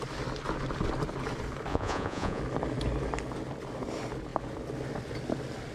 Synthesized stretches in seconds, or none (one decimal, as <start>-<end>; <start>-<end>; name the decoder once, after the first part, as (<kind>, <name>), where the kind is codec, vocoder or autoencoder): 1.7-2.4 (vocoder, Vocos)